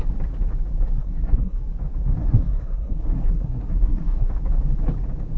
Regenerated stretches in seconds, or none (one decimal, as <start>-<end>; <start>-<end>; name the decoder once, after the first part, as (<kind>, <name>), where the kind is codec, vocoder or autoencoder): 1.0-1.6 (codec, SNAC); 2.2-4.3